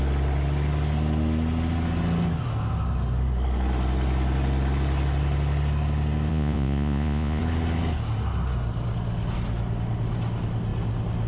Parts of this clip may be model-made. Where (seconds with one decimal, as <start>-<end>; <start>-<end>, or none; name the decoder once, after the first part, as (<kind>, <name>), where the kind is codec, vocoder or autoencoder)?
6.3-7.4 (vocoder, Vocos)